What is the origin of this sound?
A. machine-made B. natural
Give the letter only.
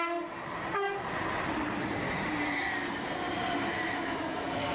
B